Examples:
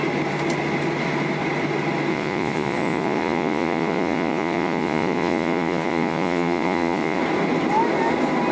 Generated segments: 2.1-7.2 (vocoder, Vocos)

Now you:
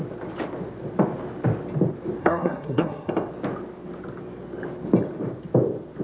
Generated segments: 2.2-3.1 (codec, SNAC)

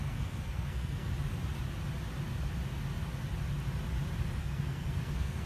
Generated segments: 0.0-1.1 (codec, SNAC); 4.4-5.5

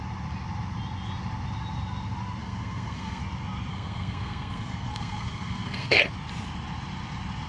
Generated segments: 2.4-3.2 (codec, SNAC); 3.7-6.0

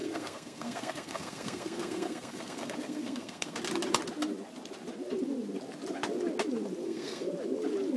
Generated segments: 0.0-3.6 (codec, SNAC); 6.8-7.3

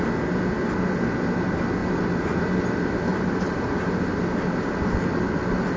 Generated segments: 1.8-2.4 (vocoder, BigVGAN v2); 3.1-4.7